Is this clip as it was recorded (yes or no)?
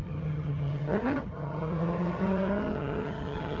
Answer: no